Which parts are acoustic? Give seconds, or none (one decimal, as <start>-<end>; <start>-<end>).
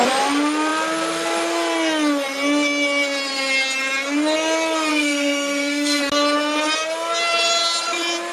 0.0-4.9; 6.0-8.3